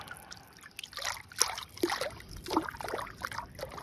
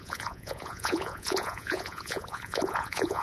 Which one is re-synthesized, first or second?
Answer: second